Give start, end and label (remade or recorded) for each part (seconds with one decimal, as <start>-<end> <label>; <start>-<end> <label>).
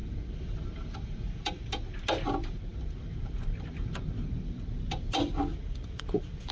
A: 0.0-1.6 remade; 1.6-2.7 recorded; 2.7-4.5 remade; 4.5-5.5 recorded; 5.5-6.5 remade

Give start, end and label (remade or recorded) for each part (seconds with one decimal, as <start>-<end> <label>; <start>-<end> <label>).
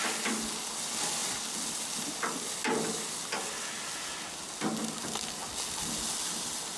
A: 0.0-6.8 recorded